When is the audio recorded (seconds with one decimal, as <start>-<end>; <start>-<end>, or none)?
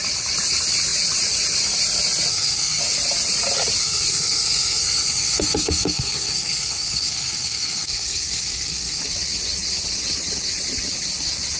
0.0-2.3; 2.8-3.8; 9.0-11.6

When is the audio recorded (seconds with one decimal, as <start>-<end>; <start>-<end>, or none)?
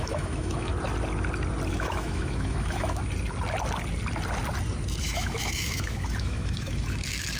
0.7-1.7; 3.0-5.0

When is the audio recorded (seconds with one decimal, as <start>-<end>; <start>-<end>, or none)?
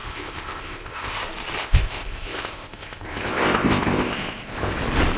1.2-1.6; 4.7-5.2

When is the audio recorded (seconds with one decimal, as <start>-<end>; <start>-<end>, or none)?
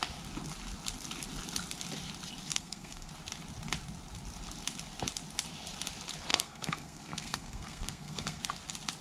0.0-2.5; 3.1-6.3; 8.4-9.0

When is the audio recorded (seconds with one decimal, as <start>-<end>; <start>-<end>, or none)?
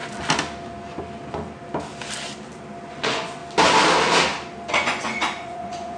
0.0-2.9; 3.4-4.7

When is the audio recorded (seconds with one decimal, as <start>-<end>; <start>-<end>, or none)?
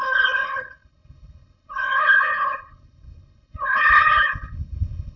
none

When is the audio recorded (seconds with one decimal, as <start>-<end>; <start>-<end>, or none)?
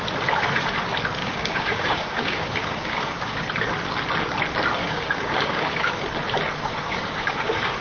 0.0-1.2; 3.4-4.8; 5.9-6.7